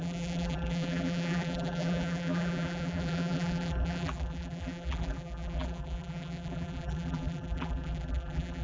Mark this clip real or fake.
fake